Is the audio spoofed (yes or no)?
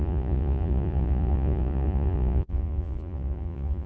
yes